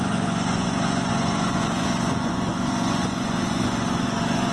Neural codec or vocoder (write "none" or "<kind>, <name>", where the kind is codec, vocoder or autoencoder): vocoder, Vocos